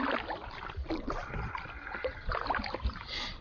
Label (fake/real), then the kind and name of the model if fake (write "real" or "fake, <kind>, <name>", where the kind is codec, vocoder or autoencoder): real